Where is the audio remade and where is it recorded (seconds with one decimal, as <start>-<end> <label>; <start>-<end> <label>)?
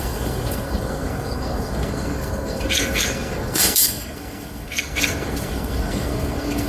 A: 0.0-6.7 remade